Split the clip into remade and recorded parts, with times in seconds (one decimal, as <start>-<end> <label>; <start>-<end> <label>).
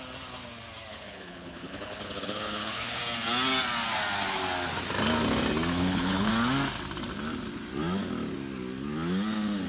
0.0-0.9 recorded; 0.9-3.0 remade; 3.0-5.7 recorded; 5.7-6.3 remade; 6.3-9.7 recorded